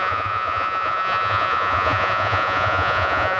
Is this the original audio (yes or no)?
no